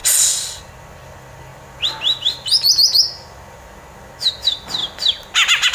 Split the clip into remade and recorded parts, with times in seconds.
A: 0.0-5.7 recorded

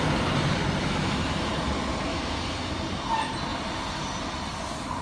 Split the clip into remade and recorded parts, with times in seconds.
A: 0.0-0.8 recorded; 0.8-1.5 remade; 1.5-2.1 recorded; 2.1-2.7 remade; 2.7-5.0 recorded

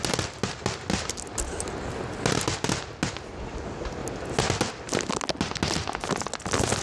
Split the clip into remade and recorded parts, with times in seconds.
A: 0.0-6.8 recorded

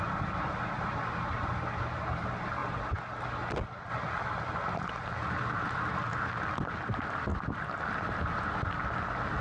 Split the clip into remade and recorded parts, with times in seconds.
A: 0.0-9.4 recorded

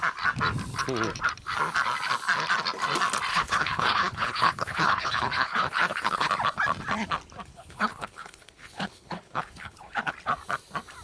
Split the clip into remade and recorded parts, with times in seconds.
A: 0.0-3.3 recorded; 3.3-6.3 remade; 6.3-7.5 recorded; 7.5-10.1 remade; 10.1-11.0 recorded

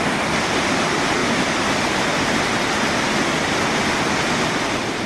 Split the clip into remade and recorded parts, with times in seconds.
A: 0.0-5.1 recorded